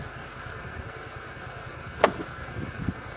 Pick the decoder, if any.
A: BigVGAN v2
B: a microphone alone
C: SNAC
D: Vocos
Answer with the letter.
C